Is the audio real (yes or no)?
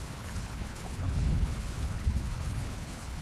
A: no